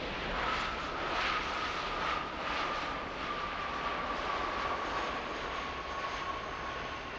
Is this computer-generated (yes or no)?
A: no